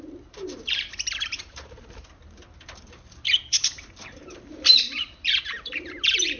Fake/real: fake